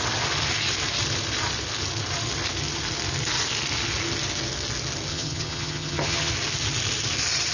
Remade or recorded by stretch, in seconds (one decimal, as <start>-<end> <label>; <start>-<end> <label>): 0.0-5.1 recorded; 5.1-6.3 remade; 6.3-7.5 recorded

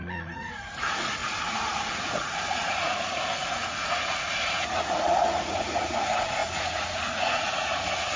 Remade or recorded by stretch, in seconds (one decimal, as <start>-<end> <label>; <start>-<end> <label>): 0.0-8.2 remade

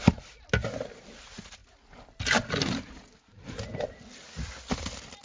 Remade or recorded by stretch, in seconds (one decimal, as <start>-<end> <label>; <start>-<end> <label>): 0.0-5.2 recorded